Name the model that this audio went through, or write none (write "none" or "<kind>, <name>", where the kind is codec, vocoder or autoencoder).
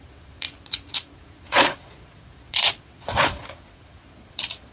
vocoder, Vocos